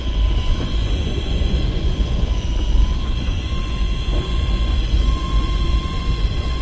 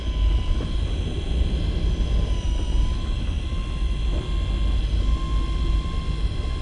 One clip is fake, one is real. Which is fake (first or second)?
first